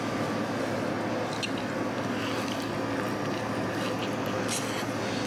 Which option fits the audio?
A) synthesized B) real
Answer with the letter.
B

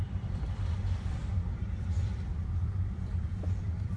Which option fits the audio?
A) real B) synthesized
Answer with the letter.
B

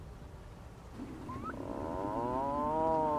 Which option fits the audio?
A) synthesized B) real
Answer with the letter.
B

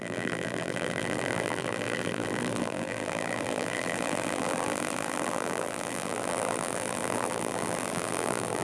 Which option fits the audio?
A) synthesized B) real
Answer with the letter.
A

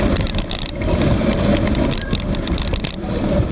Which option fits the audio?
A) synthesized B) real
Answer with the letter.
A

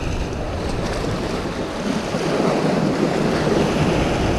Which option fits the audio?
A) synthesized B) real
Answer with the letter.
B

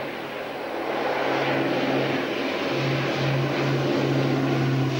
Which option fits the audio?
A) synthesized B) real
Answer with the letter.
B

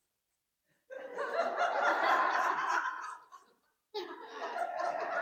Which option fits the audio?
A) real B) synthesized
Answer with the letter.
B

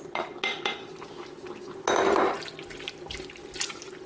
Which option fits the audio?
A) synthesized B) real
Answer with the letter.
B